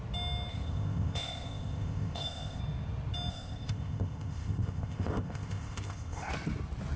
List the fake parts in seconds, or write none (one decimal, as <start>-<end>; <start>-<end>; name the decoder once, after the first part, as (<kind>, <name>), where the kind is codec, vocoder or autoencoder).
0.5-2.6 (codec, ZipCodec); 3.3-6.3